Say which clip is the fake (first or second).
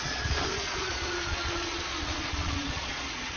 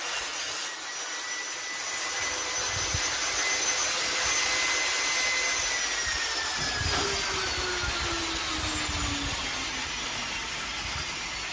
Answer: first